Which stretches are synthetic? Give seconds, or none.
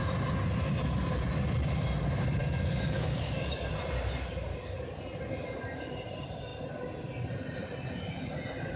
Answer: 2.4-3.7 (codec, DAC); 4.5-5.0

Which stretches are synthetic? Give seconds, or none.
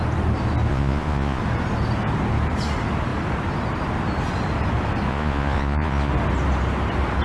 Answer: 0.7-1.4 (vocoder, Vocos); 5.1-6.1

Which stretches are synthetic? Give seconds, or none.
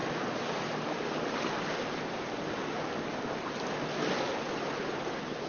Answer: none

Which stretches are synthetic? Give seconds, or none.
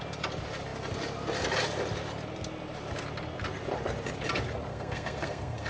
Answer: 4.7-5.7 (codec, SNAC)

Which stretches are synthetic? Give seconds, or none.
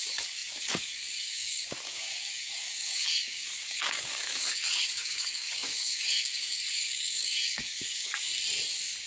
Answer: 0.0-8.3 (codec, DAC)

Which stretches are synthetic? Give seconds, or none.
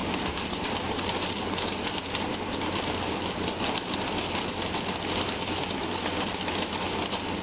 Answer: none